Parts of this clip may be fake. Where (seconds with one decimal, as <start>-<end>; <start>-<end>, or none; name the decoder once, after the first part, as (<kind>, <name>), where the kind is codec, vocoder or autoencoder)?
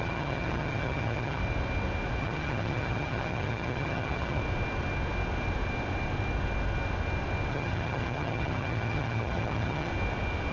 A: 0.0-1.4 (vocoder, HiFi-GAN); 2.2-4.4; 7.5-9.9